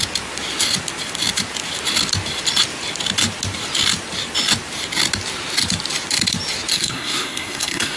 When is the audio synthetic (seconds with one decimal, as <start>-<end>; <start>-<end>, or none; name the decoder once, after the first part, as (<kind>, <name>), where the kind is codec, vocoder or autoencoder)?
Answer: 6.7-8.0 (codec, SNAC)